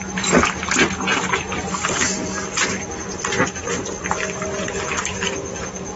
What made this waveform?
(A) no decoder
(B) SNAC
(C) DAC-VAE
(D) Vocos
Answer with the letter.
A